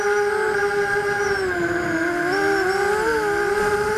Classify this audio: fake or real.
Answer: real